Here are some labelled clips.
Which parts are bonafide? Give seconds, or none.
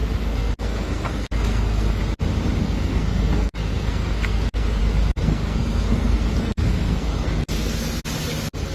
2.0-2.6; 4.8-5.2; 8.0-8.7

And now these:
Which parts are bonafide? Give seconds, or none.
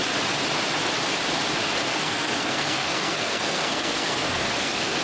0.0-1.9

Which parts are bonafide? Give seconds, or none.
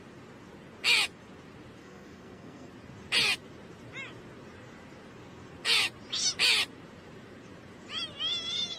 0.0-1.8; 2.7-8.8